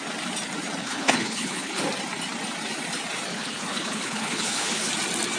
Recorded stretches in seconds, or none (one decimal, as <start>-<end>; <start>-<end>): 0.0-0.8; 1.8-3.3; 4.9-5.4